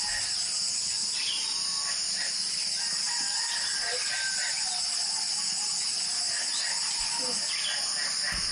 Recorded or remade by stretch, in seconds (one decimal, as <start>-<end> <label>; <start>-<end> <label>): 0.0-8.5 recorded